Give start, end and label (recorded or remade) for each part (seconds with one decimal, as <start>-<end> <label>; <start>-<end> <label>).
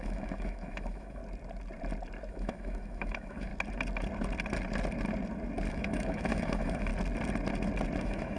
0.0-1.2 remade; 1.2-2.3 recorded; 2.3-3.5 remade; 3.5-5.7 recorded; 5.7-6.9 remade; 6.9-8.0 recorded; 8.0-8.4 remade